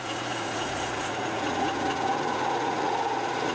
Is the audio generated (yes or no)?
yes